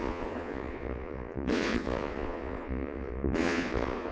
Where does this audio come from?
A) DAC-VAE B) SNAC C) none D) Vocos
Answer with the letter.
D